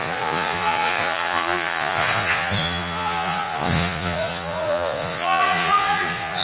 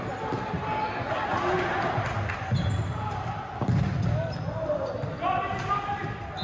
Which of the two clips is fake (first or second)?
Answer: first